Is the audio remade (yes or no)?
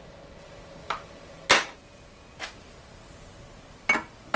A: no